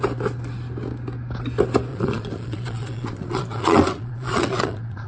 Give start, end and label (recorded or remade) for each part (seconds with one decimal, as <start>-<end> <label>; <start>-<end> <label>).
0.0-1.9 recorded; 1.9-5.1 remade

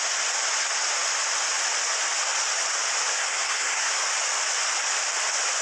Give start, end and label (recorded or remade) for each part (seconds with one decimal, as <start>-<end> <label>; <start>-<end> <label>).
0.0-3.1 recorded; 3.1-4.0 remade; 4.0-5.6 recorded

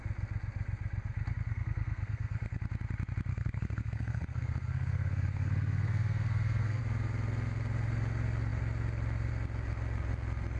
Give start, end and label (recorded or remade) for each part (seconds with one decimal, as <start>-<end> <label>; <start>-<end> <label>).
0.0-1.5 recorded; 1.5-2.6 remade; 2.6-3.3 recorded; 3.3-6.8 remade; 6.8-10.6 recorded

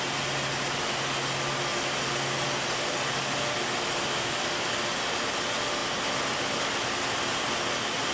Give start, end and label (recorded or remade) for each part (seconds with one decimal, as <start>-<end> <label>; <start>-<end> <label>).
0.0-8.1 recorded

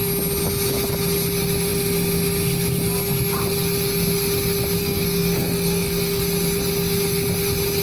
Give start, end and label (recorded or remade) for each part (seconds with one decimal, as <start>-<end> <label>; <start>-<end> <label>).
0.0-4.8 recorded; 4.8-6.2 remade; 6.2-7.8 recorded

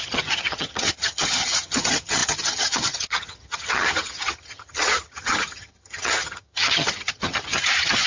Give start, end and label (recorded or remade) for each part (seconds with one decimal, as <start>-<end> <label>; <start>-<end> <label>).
0.0-8.1 remade

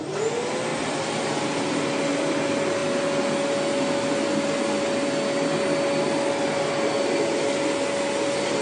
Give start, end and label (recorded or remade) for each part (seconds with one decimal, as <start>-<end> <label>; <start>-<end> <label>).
0.0-8.6 recorded